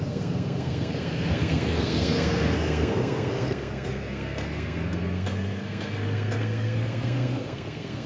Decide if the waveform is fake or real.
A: fake